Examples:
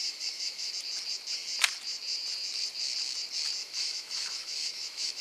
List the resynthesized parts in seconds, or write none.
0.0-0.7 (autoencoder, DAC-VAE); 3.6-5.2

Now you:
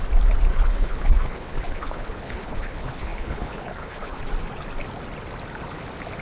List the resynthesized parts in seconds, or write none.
0.5-4.2 (codec, HILCodec)

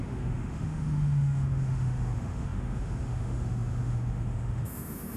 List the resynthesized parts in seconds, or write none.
0.0-5.2 (autoencoder, DAC-VAE)

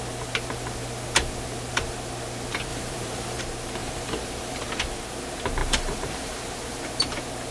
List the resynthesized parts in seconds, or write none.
2.7-3.4 (vocoder, BigVGAN v2); 3.8-4.8

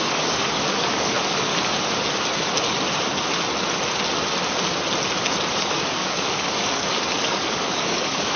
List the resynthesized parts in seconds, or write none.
0.0-1.5 (codec, DAC); 5.5-8.4

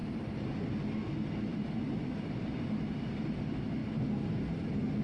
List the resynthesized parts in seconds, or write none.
none

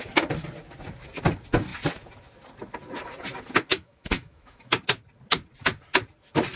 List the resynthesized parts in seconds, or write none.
3.7-4.7 (autoencoder, DAC-VAE)

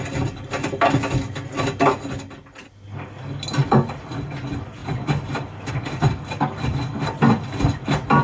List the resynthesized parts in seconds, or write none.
none